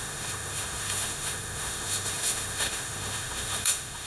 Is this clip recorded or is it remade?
remade